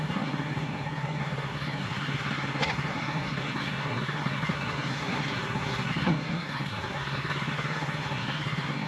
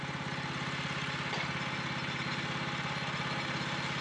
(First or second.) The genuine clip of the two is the second